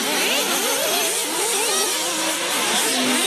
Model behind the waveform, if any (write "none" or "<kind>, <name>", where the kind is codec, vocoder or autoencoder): none